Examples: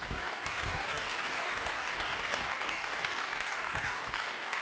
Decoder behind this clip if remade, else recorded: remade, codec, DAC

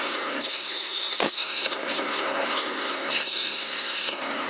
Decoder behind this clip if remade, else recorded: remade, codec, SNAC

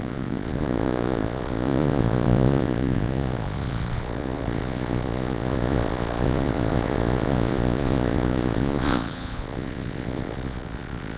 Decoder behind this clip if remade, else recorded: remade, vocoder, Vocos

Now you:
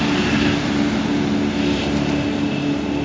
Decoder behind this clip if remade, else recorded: recorded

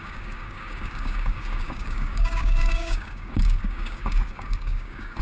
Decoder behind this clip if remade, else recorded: remade, codec, DAC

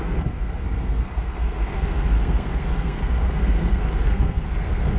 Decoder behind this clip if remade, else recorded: remade, codec, SNAC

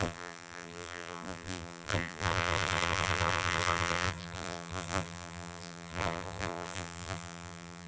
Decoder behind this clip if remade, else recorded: remade, vocoder, BigVGAN v2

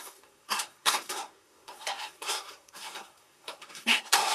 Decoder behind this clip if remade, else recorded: remade, codec, SNAC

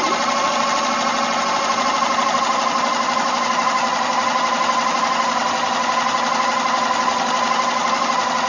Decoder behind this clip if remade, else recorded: recorded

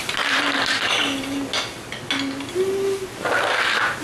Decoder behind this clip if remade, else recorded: recorded